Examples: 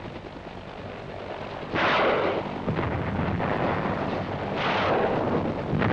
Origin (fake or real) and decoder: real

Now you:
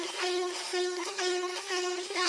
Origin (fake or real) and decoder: fake, codec, SNAC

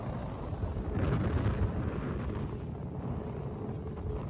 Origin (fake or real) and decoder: real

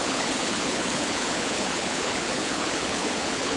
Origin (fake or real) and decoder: fake, codec, HILCodec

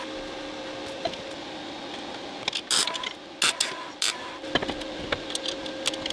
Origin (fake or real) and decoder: real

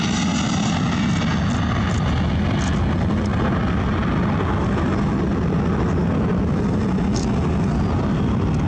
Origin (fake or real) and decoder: real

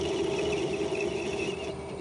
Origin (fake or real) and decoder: real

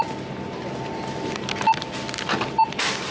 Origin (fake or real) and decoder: real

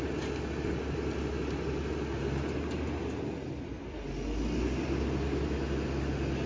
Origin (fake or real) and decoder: real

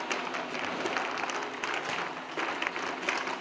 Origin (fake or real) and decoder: real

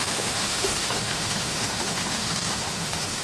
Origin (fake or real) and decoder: fake, autoencoder, DAC-VAE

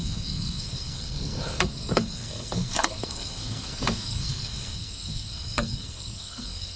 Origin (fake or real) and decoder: fake, codec, SNAC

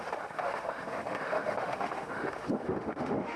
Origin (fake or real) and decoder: fake, autoencoder, DAC-VAE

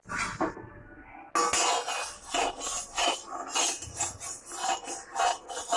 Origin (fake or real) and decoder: real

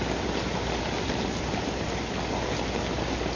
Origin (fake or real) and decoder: real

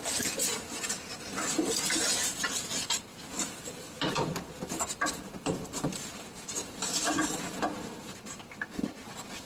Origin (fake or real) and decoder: real